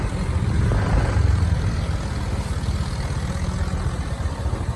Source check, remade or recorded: recorded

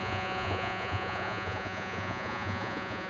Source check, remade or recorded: remade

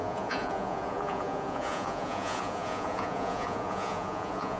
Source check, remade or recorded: remade